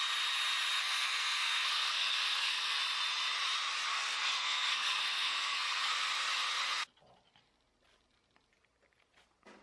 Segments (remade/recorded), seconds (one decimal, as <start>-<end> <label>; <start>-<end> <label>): 0.0-0.8 recorded; 0.8-2.8 remade; 2.8-3.9 recorded; 3.9-6.1 remade; 6.1-9.6 recorded